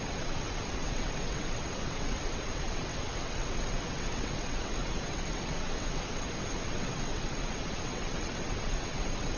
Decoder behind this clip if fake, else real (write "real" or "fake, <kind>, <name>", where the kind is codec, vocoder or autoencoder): fake, vocoder, WaveNeXt